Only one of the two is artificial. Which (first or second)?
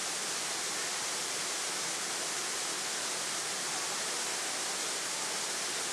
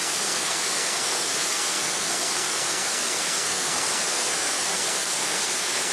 second